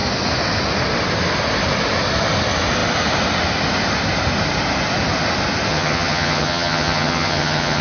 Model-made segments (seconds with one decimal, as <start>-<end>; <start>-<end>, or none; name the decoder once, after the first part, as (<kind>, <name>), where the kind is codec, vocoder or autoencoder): 5.7-7.8 (vocoder, HiFi-GAN)